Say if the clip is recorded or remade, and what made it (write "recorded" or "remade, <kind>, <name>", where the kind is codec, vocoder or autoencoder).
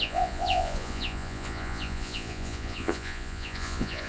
remade, vocoder, Vocos